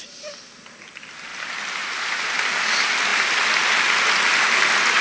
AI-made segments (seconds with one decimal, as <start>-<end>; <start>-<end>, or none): 1.3-2.3